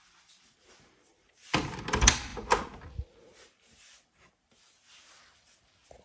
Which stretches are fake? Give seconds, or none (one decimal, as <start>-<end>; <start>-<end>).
none